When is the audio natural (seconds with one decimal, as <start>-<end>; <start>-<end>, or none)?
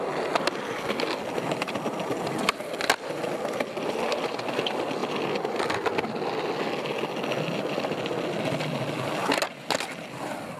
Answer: 0.0-10.6